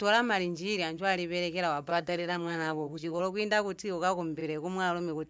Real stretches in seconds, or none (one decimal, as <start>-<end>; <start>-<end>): 0.0-1.9; 3.2-5.3